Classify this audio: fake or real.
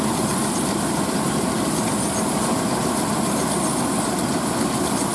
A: fake